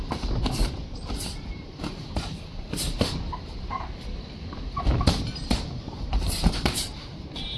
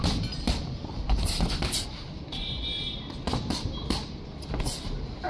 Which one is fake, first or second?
first